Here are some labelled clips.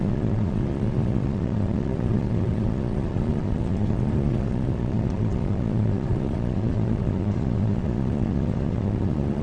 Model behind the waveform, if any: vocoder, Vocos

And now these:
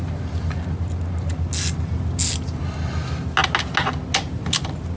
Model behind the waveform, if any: none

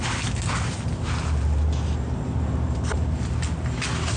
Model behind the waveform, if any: none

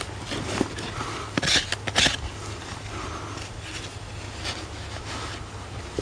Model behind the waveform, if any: none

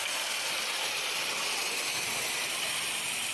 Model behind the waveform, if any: none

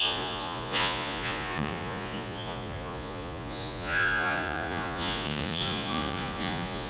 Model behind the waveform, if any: vocoder, Vocos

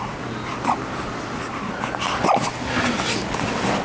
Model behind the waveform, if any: none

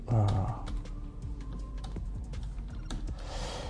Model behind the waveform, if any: none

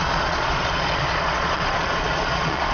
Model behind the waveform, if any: vocoder, Vocos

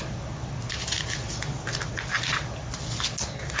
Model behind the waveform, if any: none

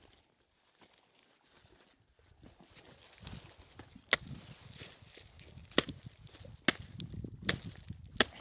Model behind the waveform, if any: none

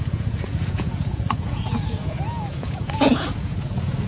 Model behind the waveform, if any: vocoder, Vocos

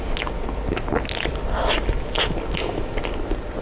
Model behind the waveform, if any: none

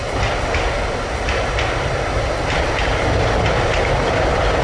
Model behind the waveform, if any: none